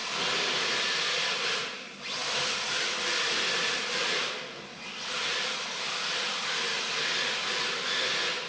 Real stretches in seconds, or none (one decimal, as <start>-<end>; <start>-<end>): 0.0-8.5

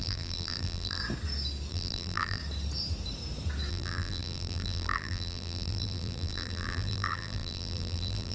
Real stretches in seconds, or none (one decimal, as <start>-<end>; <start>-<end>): 1.0-1.7; 2.4-3.7

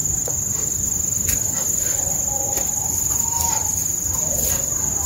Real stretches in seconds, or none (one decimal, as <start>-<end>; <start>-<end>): 3.1-5.1

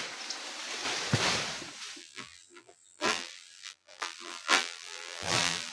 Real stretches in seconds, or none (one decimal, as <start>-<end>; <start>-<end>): 0.0-2.0

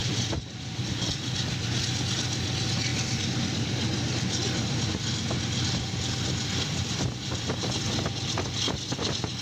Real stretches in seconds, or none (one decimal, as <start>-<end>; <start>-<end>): 1.8-2.9; 7.8-9.4

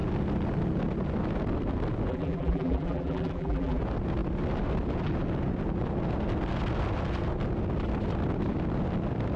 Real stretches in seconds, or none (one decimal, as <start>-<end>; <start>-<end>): 0.0-2.1; 3.8-9.4

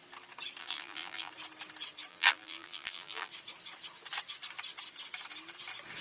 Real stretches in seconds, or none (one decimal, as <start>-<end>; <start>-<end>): 0.0-0.6; 1.3-2.1; 3.3-6.0